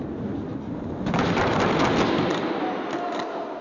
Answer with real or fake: real